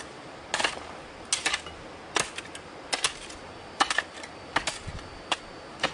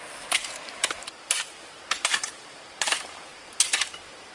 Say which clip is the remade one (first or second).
second